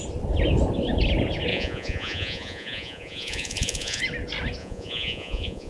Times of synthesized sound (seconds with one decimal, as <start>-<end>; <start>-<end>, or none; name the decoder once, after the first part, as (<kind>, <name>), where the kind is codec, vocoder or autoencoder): 1.5-4.0 (vocoder, Vocos); 4.6-5.7